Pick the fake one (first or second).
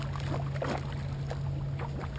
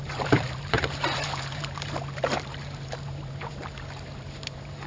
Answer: second